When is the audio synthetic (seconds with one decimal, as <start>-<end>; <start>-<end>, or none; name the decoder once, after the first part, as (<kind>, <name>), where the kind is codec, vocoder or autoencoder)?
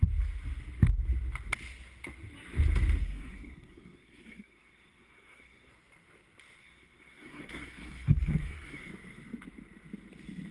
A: 3.0-5.7 (codec, SNAC); 6.6-8.9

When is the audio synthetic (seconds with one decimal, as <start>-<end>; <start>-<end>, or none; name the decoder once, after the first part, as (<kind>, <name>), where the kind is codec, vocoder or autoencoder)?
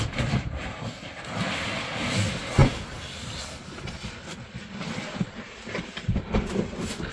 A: none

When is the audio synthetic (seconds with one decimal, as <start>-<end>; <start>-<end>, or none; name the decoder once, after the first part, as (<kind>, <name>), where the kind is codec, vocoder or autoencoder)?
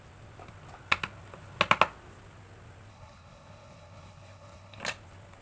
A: 2.9-4.8 (codec, HILCodec)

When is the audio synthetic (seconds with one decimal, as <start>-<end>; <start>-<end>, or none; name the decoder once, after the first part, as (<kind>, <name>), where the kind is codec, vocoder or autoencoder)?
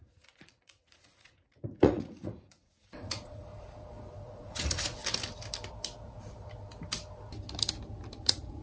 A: 0.0-3.5 (vocoder, Vocos); 4.2-5.0; 8.2-8.6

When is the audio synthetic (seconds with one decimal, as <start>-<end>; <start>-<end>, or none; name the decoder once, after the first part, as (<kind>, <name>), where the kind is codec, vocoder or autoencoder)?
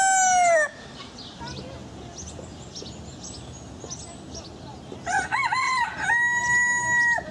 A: none